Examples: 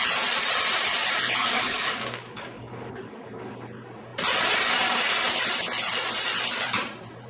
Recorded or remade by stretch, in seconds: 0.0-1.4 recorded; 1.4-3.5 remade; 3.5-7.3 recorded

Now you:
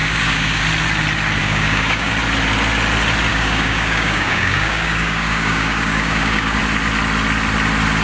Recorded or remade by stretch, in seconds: 0.0-0.6 remade; 0.6-1.4 recorded; 1.4-2.1 remade; 2.1-3.3 recorded; 3.3-6.6 remade; 6.6-8.0 recorded

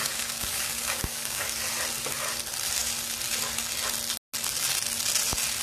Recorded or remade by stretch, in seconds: 0.0-1.5 remade; 1.5-5.6 recorded

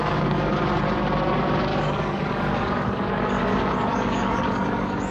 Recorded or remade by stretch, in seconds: 0.0-0.6 remade; 0.6-1.7 recorded; 1.7-5.1 remade

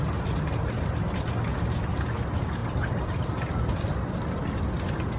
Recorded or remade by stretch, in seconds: 0.0-5.2 recorded